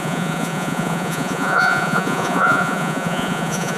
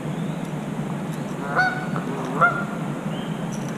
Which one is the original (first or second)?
second